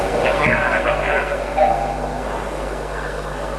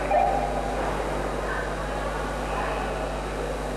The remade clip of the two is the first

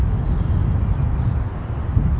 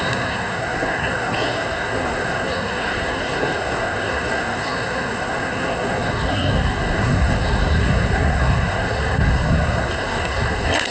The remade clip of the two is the second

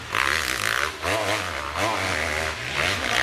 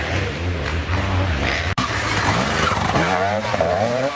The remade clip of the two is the second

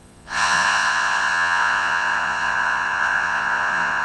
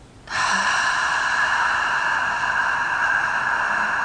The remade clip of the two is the first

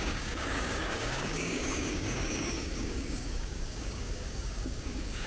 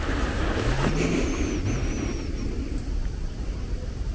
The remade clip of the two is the first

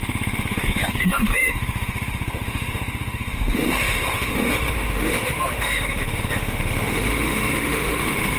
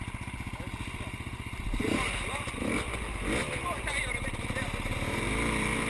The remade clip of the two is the first